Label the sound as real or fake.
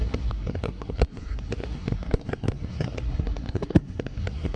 fake